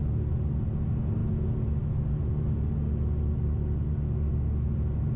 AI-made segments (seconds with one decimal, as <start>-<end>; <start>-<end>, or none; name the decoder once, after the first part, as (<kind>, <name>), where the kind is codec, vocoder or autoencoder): none